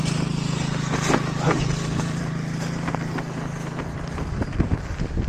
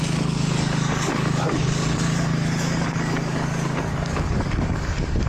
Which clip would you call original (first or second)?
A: first